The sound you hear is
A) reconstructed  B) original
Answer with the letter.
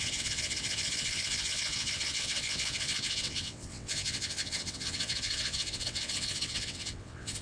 A